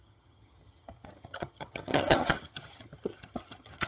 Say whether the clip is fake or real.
fake